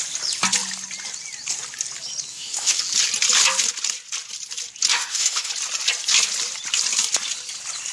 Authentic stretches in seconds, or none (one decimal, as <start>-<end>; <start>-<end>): 0.0-2.3; 2.8-4.9; 5.5-7.9